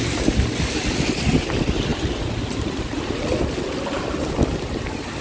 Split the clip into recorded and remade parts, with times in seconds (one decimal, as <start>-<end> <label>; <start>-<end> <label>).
0.0-1.9 recorded; 1.9-3.4 remade; 3.4-5.2 recorded

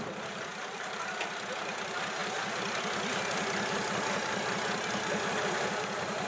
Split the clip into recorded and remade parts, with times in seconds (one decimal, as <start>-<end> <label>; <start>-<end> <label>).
0.0-0.5 recorded; 0.5-1.0 remade; 1.0-6.3 recorded

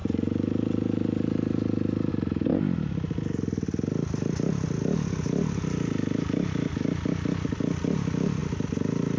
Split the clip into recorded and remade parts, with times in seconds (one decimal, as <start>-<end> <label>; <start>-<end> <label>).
0.0-2.1 remade; 2.1-8.4 recorded; 8.4-9.2 remade